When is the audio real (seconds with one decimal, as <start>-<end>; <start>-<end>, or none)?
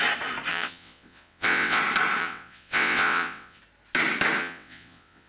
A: 0.0-0.5; 1.8-2.2; 3.6-4.4